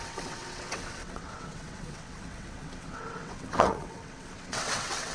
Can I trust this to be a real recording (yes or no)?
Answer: no